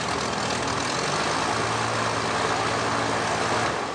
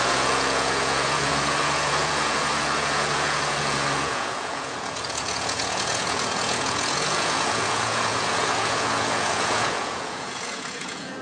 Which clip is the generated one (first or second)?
second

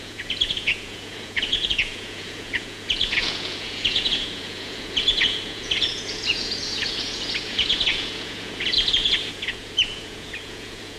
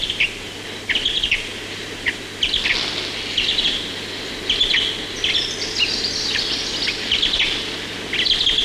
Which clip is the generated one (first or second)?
first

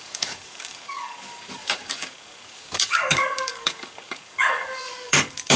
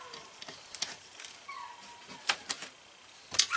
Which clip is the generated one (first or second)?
first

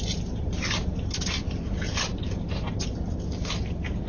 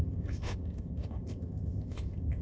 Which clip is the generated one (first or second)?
second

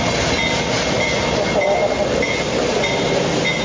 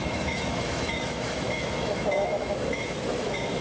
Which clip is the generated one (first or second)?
second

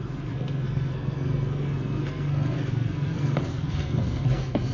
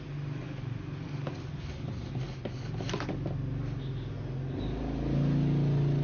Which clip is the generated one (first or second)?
first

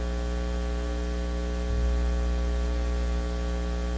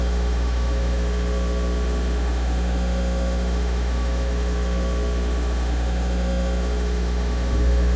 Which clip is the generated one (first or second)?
second